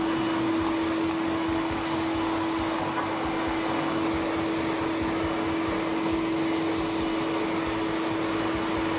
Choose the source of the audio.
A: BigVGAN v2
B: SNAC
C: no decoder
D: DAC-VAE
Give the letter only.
C